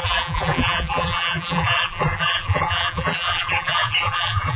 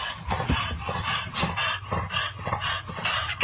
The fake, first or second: first